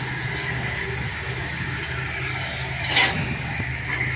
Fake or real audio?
fake